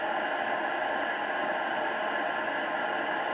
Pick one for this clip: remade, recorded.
recorded